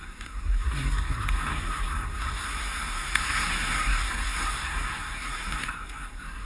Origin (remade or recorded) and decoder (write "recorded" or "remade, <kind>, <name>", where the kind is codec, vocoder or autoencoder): remade, codec, SNAC